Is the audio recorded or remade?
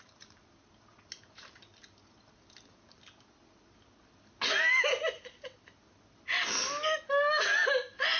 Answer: recorded